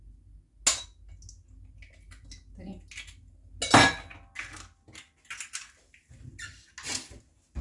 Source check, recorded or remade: recorded